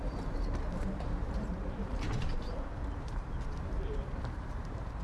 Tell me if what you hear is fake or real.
fake